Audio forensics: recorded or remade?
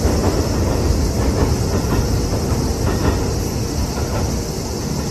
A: recorded